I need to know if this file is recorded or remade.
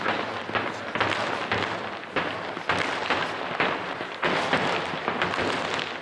recorded